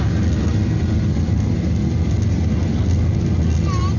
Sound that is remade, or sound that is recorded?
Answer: recorded